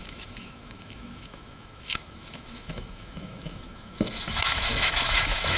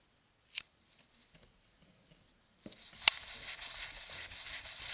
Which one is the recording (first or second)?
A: second